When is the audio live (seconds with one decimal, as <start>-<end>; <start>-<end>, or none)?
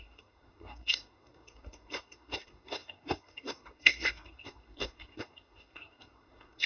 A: none